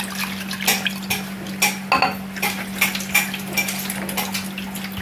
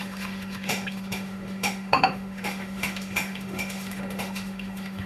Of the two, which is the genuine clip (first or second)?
first